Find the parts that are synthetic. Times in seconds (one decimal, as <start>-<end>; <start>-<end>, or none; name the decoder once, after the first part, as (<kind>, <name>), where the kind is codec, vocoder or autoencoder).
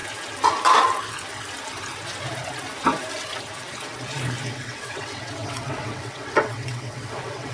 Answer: 4.5-7.5 (vocoder, WaveNeXt)